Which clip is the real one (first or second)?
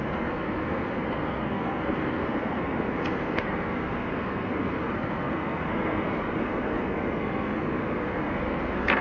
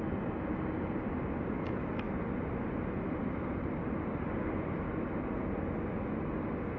second